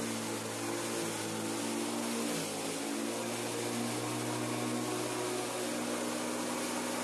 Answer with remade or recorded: recorded